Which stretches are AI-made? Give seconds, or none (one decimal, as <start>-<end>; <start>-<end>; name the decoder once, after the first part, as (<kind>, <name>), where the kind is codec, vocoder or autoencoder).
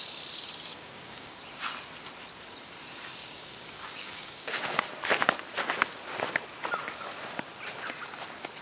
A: 0.7-1.3 (codec, DAC); 3.2-4.8